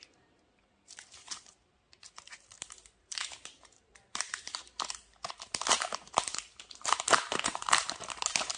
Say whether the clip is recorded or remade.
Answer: remade